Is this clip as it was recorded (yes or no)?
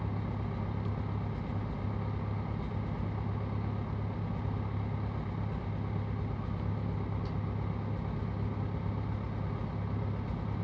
yes